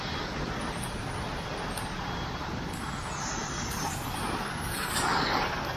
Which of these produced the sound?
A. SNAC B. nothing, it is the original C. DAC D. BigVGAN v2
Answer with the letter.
B